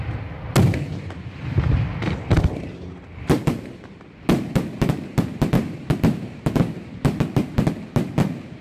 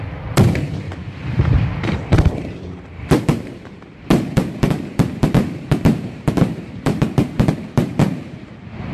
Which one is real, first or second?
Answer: first